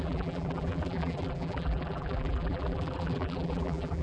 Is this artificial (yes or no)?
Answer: yes